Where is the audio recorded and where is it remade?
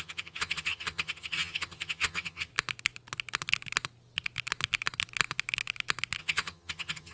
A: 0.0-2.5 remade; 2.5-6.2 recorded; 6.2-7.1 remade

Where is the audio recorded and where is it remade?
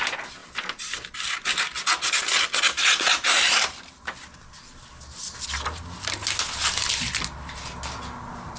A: 0.0-8.6 recorded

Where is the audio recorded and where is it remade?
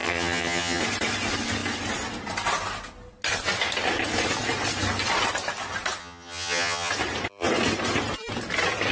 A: 0.0-0.8 remade; 0.8-6.0 recorded; 6.0-6.9 remade; 6.9-8.9 recorded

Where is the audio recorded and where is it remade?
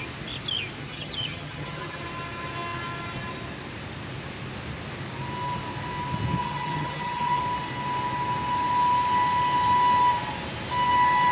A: 0.0-0.8 recorded; 0.8-2.0 remade; 2.0-6.4 recorded; 6.4-7.4 remade; 7.4-11.3 recorded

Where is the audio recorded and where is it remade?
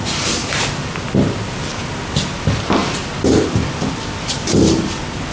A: 0.0-5.3 recorded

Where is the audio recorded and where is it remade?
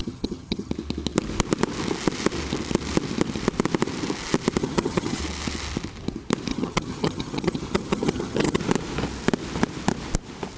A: 0.0-0.7 remade; 0.7-4.6 recorded; 4.6-5.2 remade; 5.2-6.5 recorded; 6.5-8.6 remade; 8.6-10.6 recorded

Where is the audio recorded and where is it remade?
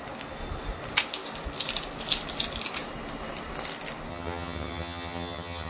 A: 0.0-4.1 recorded; 4.1-5.7 remade